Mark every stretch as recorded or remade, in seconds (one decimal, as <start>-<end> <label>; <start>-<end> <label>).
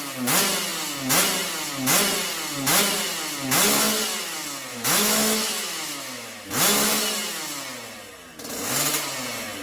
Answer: 0.0-4.7 recorded; 4.7-6.5 remade; 6.5-9.6 recorded